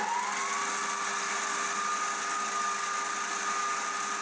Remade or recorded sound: recorded